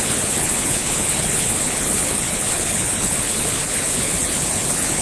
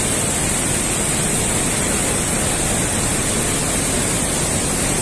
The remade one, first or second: first